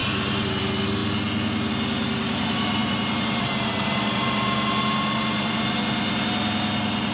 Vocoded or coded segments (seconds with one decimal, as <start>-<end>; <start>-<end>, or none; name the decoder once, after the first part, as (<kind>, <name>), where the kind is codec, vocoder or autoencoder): 0.0-0.6 (vocoder, BigVGAN v2); 2.8-5.8